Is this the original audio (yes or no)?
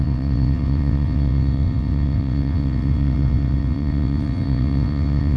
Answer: no